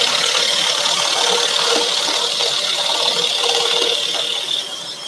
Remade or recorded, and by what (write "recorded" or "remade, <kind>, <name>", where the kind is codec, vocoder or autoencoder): recorded